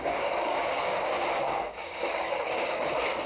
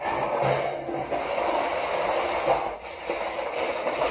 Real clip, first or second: second